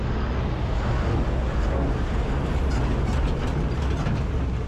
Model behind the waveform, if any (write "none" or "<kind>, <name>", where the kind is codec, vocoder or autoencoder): none